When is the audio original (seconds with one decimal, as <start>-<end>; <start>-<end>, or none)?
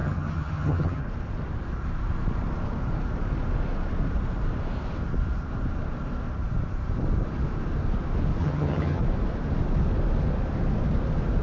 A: 1.0-8.4; 9.0-11.4